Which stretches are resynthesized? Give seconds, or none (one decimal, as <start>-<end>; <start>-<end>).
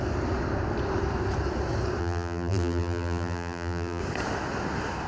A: 2.0-4.0